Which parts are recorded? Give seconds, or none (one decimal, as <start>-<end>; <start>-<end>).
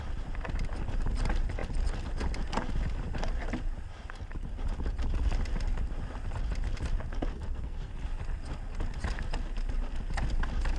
0.0-7.3; 7.9-10.8